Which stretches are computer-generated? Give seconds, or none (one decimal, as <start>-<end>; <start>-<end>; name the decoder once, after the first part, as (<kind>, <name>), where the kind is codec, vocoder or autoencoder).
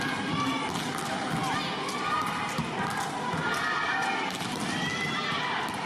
none